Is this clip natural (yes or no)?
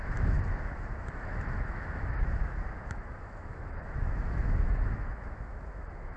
no